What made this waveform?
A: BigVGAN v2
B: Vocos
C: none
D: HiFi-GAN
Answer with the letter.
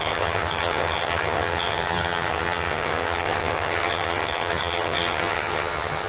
D